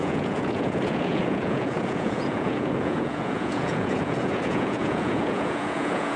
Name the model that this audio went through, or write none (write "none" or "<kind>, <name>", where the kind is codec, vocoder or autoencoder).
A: vocoder, Vocos